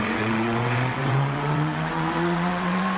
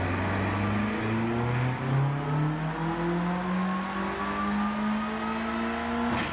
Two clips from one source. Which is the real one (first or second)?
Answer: second